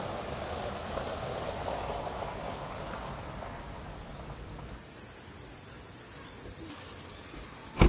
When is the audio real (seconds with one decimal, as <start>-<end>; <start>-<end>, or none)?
0.0-7.9